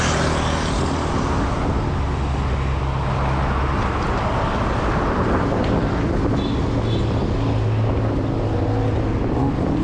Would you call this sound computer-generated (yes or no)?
no